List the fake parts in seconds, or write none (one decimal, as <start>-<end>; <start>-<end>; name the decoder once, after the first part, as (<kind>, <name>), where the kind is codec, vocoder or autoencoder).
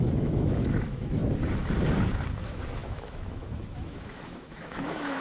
0.0-1.2 (autoencoder, DAC-VAE); 2.4-5.2